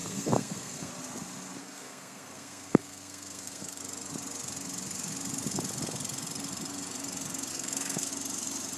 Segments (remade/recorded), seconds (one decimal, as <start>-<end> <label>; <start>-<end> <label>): 0.0-0.9 remade; 0.9-1.6 recorded; 1.6-3.8 remade; 3.8-7.5 recorded; 7.5-8.1 remade; 8.1-8.8 recorded